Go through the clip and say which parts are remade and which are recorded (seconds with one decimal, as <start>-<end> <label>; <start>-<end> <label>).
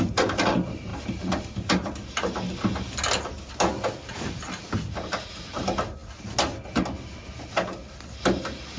0.0-8.8 recorded